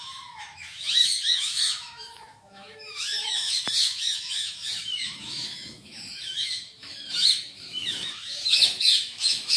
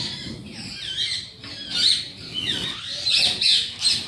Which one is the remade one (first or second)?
first